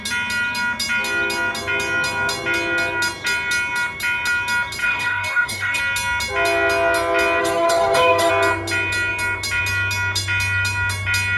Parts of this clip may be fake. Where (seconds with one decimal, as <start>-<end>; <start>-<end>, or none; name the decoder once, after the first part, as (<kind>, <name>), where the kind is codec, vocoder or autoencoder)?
4.8-5.8 (codec, DAC); 7.4-8.3

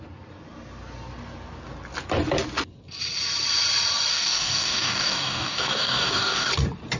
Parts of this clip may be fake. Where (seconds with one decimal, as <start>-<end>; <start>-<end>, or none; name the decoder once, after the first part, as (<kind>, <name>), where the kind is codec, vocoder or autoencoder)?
4.1-6.5 (codec, DAC)

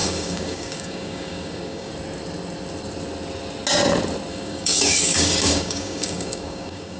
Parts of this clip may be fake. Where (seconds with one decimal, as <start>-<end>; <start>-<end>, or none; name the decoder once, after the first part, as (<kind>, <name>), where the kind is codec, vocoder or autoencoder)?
0.0-1.9 (codec, DAC); 4.3-7.0

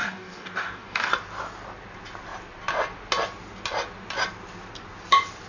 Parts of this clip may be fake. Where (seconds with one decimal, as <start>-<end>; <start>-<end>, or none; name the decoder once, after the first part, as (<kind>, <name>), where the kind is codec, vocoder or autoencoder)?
0.0-1.1 (codec, DAC)

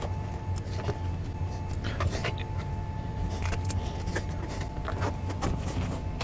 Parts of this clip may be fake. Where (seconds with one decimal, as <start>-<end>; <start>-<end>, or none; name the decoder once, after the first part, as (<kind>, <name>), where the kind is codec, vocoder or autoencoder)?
none

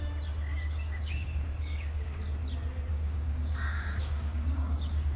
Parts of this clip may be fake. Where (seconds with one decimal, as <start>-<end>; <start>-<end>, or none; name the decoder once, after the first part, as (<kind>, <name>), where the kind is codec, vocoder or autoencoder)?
0.5-2.2 (codec, DAC); 2.9-4.8

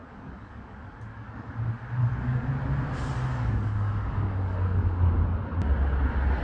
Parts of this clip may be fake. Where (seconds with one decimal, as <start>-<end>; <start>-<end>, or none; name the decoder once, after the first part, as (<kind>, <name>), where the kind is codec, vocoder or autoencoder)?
0.0-1.5 (codec, DAC); 2.0-2.5; 3.3-5.1